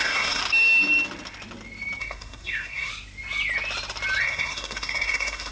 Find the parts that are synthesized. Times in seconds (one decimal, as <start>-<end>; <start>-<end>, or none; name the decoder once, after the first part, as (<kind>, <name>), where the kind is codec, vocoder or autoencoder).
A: 0.0-0.4 (codec, SNAC); 2.0-2.9; 4.2-5.5